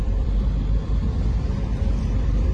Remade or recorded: remade